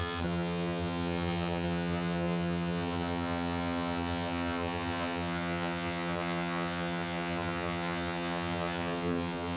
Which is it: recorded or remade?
remade